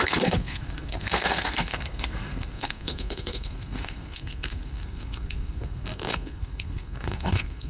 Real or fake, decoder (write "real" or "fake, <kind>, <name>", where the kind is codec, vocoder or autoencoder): fake, codec, SNAC